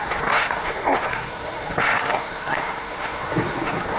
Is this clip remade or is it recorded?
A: remade